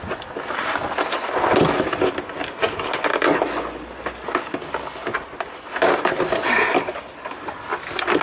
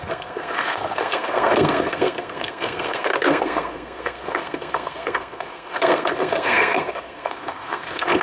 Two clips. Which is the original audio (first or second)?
first